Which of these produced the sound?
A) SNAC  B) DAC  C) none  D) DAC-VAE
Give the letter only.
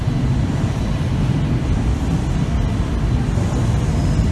C